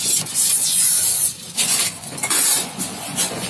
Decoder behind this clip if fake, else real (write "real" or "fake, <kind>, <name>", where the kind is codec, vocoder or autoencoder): fake, vocoder, Vocos